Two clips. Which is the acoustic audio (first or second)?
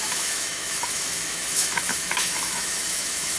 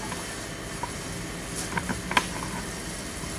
second